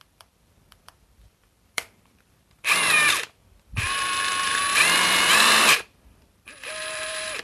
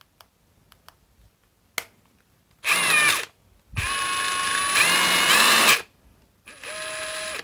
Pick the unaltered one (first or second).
second